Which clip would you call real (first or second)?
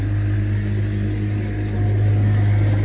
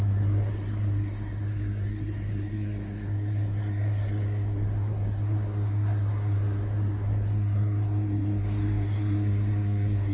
first